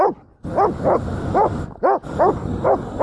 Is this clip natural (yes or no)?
yes